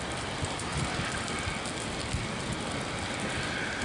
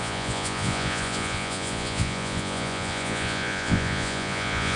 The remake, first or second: second